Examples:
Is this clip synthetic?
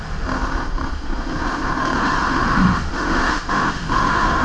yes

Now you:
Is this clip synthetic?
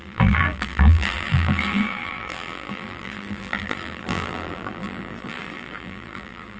yes